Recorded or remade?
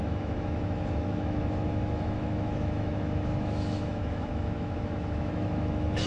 remade